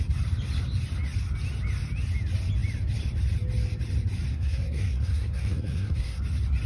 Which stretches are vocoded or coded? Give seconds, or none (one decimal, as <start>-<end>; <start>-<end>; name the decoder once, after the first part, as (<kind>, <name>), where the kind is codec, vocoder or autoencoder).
4.3-6.2 (codec, SNAC)